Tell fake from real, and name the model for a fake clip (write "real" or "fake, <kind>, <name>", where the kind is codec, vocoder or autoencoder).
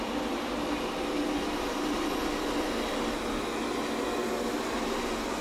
real